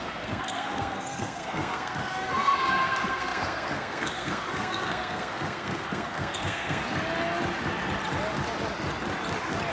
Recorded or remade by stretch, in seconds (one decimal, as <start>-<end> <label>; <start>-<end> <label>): 0.0-6.8 remade; 6.8-9.7 recorded